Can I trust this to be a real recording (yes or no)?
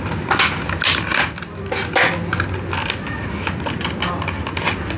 yes